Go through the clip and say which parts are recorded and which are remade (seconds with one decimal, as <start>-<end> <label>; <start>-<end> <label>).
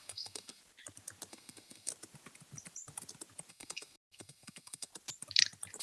0.0-0.6 remade; 0.6-1.3 recorded; 1.3-1.9 remade; 1.9-3.5 recorded; 3.5-4.9 remade; 4.9-5.8 recorded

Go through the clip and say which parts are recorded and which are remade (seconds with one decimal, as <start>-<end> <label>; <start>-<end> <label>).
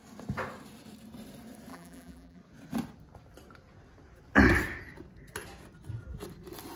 0.0-1.7 recorded; 1.7-2.4 remade; 2.4-6.8 recorded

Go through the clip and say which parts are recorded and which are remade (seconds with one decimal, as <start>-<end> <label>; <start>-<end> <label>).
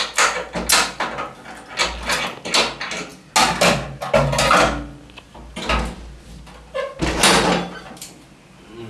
0.0-8.9 recorded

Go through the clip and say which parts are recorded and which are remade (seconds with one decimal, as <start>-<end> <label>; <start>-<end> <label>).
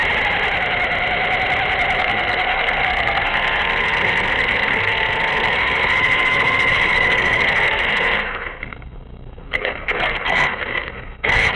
0.0-2.0 recorded; 2.0-11.6 remade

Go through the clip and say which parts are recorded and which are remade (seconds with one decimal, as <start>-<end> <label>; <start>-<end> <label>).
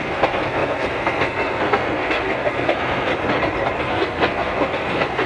0.0-3.1 remade; 3.1-3.8 recorded; 3.8-5.3 remade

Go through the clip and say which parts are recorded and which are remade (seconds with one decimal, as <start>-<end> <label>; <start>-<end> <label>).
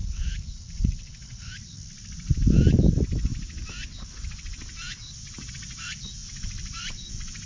0.0-1.5 remade; 1.5-7.5 recorded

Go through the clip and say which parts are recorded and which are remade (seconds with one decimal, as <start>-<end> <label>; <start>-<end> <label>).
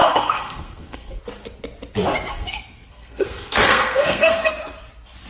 0.0-1.2 remade; 1.2-2.3 recorded; 2.3-4.5 remade; 4.5-5.3 recorded